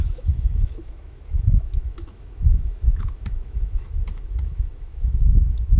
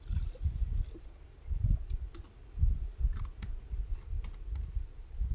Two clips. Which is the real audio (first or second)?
second